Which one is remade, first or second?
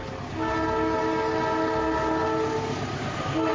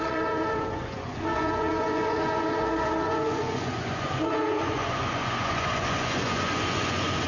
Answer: second